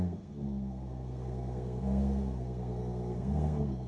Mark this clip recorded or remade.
remade